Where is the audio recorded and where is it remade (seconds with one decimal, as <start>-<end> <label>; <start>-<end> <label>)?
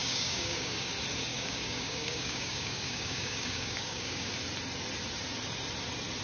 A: 0.0-0.9 remade; 0.9-1.3 recorded; 1.3-4.3 remade; 4.3-6.2 recorded